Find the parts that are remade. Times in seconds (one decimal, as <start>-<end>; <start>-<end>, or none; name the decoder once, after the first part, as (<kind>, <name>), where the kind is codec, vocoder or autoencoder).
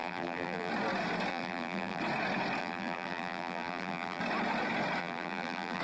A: 0.0-0.7 (vocoder, BigVGAN v2); 1.3-2.0; 2.6-4.2; 5.0-5.8